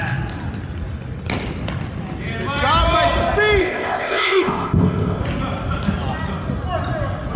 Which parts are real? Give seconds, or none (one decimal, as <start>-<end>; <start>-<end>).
0.0-3.6; 5.2-7.4